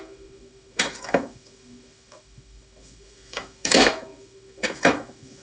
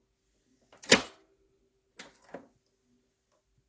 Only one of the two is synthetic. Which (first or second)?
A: first